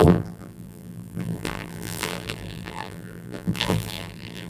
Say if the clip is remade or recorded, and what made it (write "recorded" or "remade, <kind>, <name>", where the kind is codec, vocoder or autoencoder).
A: remade, vocoder, BigVGAN v2